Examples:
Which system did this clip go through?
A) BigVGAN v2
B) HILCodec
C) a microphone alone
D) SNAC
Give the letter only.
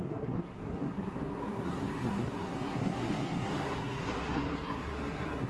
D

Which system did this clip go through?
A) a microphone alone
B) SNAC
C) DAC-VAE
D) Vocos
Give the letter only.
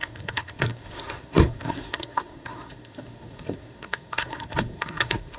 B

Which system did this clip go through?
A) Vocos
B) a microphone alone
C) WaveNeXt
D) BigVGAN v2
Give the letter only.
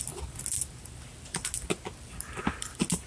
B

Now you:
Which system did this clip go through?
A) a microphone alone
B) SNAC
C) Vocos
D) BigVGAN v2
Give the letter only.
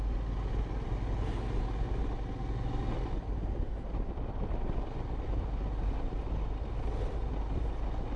A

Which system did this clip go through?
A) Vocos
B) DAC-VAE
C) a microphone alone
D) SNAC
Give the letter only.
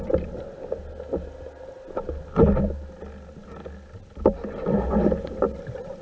C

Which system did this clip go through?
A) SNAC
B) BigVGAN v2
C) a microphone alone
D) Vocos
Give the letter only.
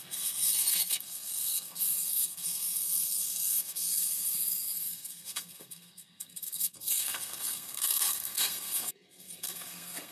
A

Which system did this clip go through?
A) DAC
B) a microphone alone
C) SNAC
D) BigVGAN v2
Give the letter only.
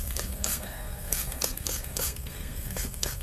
C